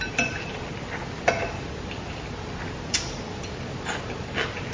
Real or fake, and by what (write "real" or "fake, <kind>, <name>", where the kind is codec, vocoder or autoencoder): real